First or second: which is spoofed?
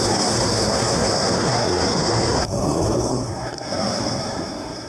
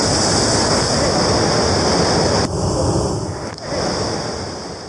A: first